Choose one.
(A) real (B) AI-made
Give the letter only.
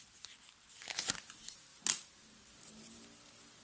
A